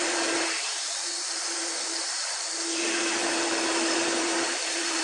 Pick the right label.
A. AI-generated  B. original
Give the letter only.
A